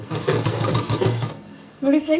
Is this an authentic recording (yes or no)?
no